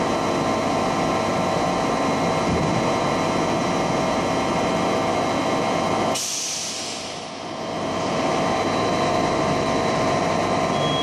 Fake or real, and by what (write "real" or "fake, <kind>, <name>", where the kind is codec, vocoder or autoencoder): real